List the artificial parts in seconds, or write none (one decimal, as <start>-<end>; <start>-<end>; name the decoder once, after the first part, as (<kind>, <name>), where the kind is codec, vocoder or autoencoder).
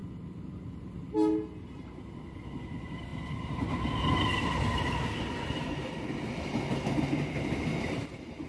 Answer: none